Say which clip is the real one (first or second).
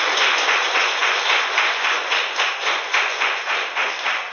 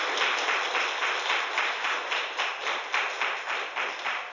second